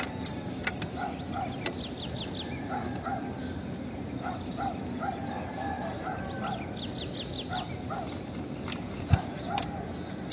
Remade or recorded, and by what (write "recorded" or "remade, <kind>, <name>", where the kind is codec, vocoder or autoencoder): recorded